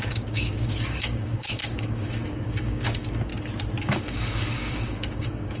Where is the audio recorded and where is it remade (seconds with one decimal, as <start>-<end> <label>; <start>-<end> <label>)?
0.0-3.3 remade; 3.3-3.8 recorded; 3.8-5.6 remade